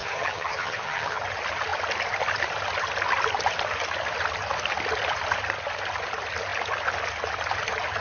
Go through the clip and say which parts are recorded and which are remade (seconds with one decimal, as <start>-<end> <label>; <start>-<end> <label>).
0.0-1.2 remade; 1.2-8.0 recorded